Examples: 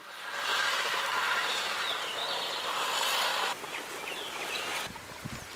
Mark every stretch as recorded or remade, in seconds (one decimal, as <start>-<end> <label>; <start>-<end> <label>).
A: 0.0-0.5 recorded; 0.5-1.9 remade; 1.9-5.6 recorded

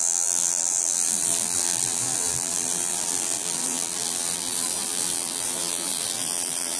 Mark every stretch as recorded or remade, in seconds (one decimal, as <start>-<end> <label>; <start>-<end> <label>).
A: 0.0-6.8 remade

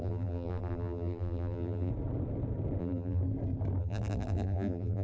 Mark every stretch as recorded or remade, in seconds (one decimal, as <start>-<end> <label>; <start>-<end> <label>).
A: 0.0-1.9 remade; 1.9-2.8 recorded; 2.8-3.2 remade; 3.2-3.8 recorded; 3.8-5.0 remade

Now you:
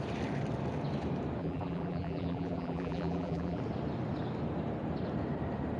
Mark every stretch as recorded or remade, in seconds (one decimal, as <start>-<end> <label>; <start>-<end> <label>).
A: 0.0-1.4 recorded; 1.4-3.6 remade; 3.6-5.8 recorded

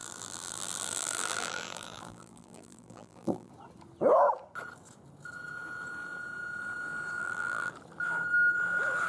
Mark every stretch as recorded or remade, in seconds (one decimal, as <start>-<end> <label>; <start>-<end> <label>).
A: 0.0-3.5 remade; 3.5-7.2 recorded; 7.2-7.7 remade; 7.7-9.1 recorded

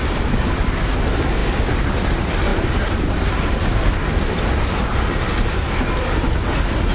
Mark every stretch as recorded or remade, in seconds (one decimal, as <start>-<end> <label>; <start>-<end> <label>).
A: 0.0-2.5 recorded; 2.5-3.6 remade; 3.6-6.9 recorded